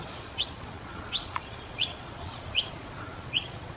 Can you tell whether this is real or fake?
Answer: fake